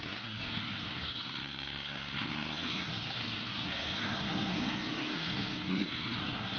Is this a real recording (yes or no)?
no